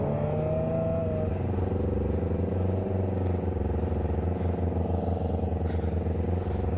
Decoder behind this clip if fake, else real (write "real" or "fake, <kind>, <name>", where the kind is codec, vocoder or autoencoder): real